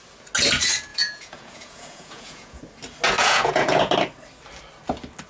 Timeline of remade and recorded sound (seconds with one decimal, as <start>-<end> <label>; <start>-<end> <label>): 0.0-0.9 recorded; 0.9-2.6 remade; 2.6-3.2 recorded; 3.2-3.9 remade; 3.9-5.3 recorded